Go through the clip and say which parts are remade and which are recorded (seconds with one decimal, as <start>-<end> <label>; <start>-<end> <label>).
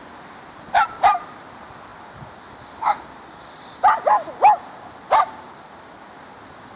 0.0-6.8 recorded